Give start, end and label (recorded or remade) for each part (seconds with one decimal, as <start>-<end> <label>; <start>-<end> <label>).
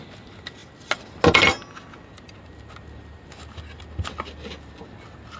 0.0-5.4 recorded